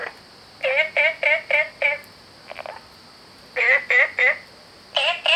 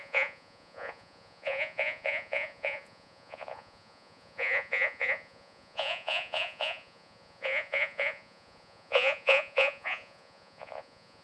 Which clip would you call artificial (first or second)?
second